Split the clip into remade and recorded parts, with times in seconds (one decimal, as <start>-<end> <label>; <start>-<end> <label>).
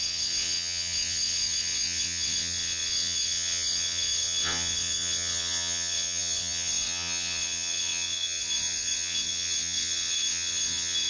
0.0-11.1 remade